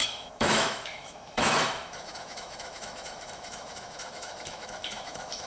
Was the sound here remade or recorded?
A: remade